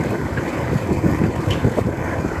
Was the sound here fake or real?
fake